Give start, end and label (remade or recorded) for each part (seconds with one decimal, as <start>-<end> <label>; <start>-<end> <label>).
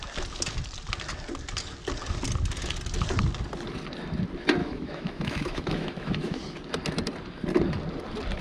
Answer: 0.0-4.6 recorded; 4.6-6.4 remade; 6.4-8.4 recorded